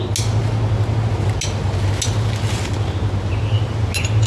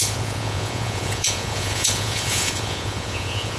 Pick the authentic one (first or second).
first